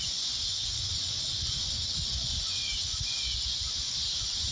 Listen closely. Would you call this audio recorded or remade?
remade